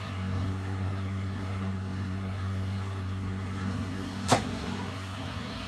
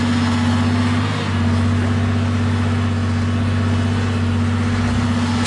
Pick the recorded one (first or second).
second